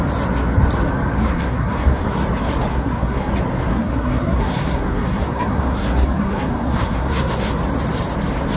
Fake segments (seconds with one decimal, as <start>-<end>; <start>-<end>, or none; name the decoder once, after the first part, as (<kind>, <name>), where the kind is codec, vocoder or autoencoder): 1.2-2.2 (codec, SNAC); 2.7-3.3; 3.7-7.5